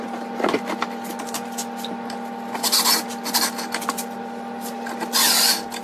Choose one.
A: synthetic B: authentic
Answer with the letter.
B